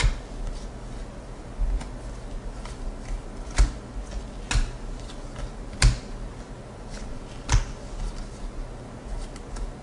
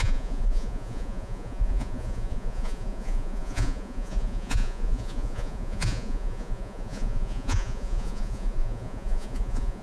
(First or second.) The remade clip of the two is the second